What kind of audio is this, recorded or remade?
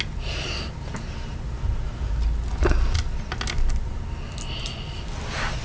recorded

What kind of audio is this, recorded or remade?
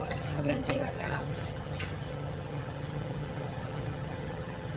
remade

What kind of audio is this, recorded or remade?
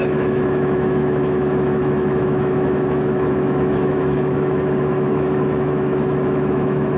remade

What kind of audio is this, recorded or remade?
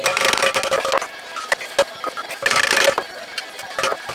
recorded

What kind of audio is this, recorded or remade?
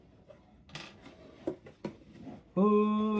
recorded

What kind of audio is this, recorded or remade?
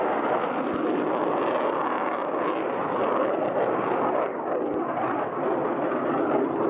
recorded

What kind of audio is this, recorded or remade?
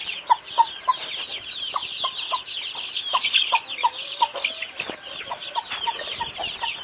recorded